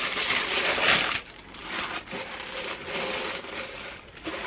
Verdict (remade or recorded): recorded